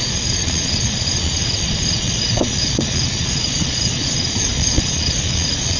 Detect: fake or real fake